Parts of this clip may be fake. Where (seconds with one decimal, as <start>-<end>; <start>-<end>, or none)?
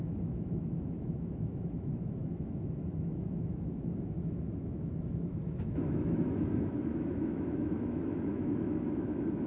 0.0-9.5